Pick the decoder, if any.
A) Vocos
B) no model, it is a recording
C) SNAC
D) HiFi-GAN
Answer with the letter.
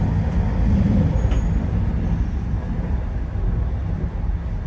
B